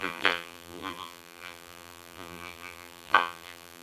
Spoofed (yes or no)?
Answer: yes